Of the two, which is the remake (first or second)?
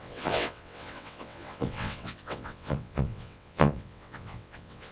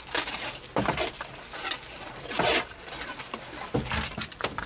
first